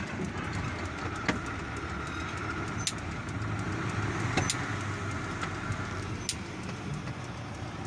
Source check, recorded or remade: recorded